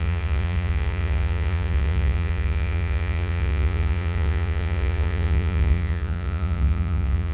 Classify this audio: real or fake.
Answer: fake